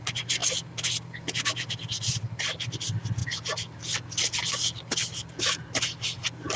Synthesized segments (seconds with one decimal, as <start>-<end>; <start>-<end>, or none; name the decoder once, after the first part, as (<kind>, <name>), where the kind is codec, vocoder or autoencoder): none